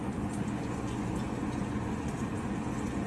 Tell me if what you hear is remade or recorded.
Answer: remade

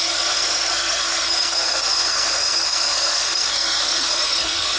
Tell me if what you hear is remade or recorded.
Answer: remade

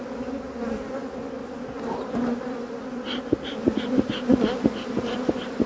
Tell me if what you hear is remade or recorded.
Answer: recorded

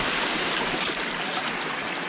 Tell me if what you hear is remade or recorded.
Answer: recorded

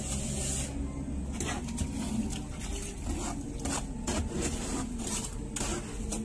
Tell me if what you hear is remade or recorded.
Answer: recorded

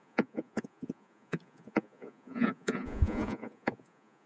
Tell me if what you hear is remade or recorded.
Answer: remade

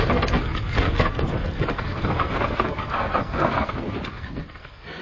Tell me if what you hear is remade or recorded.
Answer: remade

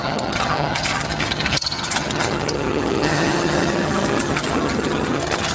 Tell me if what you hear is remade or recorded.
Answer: remade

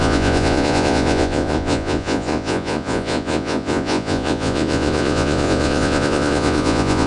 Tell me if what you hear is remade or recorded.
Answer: remade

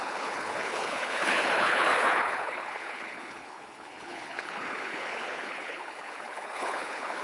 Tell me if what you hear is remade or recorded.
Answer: remade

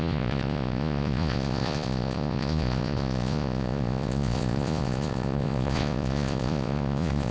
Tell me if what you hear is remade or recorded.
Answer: remade